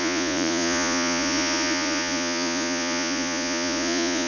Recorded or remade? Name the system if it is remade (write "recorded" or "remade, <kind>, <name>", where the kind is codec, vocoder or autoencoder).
remade, vocoder, Vocos